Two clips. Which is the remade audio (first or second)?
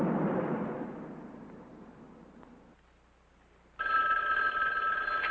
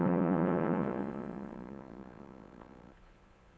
second